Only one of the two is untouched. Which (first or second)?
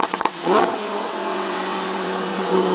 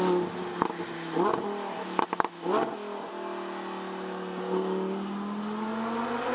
second